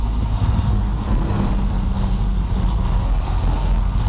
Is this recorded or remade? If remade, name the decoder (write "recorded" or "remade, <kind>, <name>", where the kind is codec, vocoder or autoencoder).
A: remade, codec, SNAC